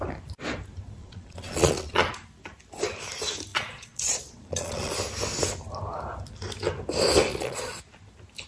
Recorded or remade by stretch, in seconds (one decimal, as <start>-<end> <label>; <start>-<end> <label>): 0.0-1.0 recorded; 1.0-2.1 remade; 2.1-3.5 recorded; 3.5-4.9 remade; 4.9-7.3 recorded; 7.3-7.8 remade; 7.8-8.5 recorded